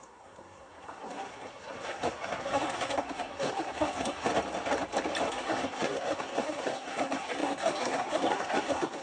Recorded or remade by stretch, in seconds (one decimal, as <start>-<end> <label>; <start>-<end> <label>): 0.0-4.3 remade; 4.3-5.3 recorded; 5.3-9.0 remade